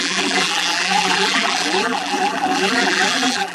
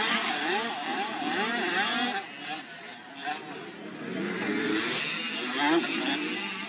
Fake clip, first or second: first